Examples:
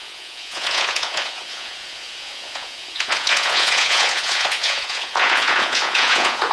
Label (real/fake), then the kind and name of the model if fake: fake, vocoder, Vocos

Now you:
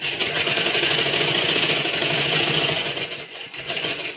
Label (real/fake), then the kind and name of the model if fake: fake, vocoder, Vocos